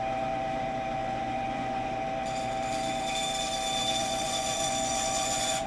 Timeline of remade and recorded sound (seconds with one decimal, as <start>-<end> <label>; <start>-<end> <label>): 0.0-1.0 recorded; 1.0-1.9 remade; 1.9-4.0 recorded; 4.0-5.7 remade